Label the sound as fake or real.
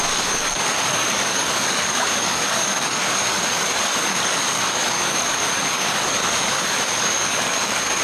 fake